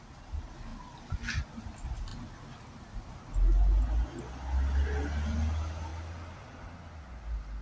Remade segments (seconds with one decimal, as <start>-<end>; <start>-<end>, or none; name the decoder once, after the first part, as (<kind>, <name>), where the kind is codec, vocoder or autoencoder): none